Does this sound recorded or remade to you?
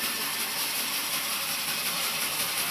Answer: remade